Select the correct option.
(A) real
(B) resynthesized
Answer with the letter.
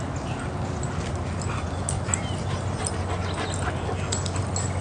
A